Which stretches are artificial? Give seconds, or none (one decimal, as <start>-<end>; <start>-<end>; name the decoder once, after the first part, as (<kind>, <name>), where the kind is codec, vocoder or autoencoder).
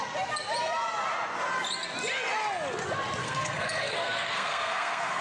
3.2-5.2 (codec, SNAC)